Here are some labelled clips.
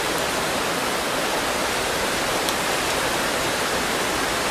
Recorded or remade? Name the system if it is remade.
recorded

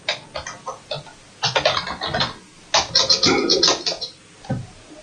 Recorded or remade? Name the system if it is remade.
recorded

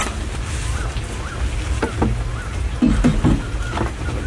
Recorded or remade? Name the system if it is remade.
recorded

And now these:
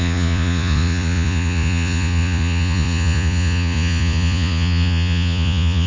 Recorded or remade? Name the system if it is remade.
remade, vocoder, Vocos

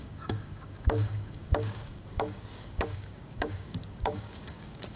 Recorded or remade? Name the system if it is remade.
remade, codec, DAC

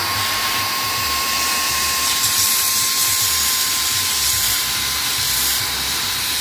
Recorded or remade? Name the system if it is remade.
remade, vocoder, BigVGAN v2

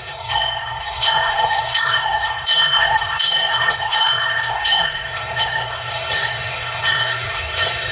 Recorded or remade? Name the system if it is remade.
remade, codec, SNAC